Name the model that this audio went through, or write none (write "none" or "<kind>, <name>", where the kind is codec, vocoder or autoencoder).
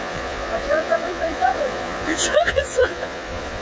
vocoder, Vocos